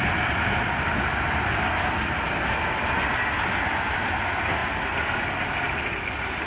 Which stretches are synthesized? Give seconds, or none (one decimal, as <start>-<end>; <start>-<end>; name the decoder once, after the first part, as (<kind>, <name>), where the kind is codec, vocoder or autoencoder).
none